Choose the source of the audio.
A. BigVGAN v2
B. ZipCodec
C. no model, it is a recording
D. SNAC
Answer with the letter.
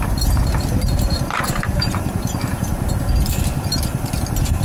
A